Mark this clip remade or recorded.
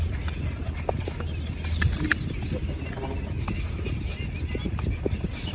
recorded